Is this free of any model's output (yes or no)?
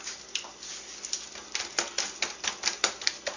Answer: yes